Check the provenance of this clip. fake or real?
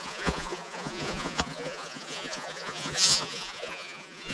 fake